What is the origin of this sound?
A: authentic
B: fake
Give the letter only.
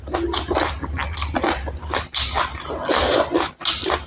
A